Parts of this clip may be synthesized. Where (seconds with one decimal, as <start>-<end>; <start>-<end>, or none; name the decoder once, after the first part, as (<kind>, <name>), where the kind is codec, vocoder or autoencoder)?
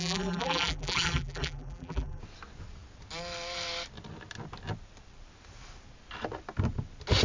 0.0-2.2 (vocoder, BigVGAN v2)